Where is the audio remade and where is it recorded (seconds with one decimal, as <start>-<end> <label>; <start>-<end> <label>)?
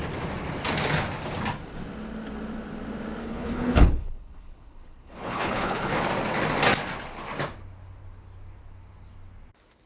0.0-3.2 recorded; 3.2-6.0 remade; 6.0-9.9 recorded